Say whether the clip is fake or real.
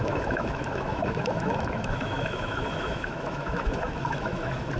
fake